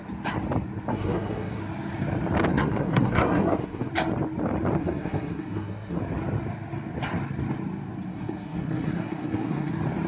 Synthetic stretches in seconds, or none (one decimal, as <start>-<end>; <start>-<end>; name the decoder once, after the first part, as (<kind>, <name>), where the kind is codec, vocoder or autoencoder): 0.9-1.6 (codec, SNAC); 2.5-3.9; 4.8-6.0; 8.1-9.7